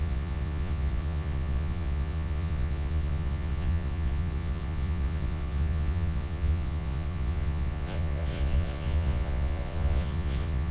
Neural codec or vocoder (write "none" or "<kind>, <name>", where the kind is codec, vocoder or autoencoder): vocoder, Vocos